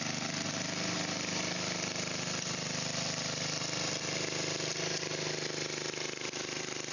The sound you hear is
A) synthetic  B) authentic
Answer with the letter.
B